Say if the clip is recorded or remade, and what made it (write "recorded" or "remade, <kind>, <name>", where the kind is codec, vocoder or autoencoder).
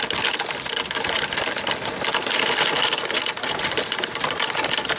recorded